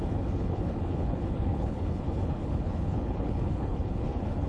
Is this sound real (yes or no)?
no